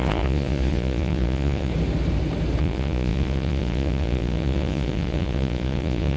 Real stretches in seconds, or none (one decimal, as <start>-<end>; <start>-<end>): 1.7-2.6

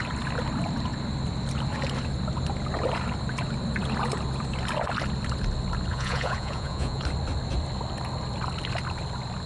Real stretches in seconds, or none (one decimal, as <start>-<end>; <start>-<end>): 0.0-5.9; 7.0-9.5